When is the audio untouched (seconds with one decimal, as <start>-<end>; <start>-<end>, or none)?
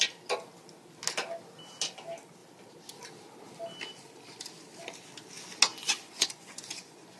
0.0-5.7